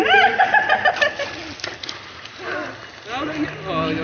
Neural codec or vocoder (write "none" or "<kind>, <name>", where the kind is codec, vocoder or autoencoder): none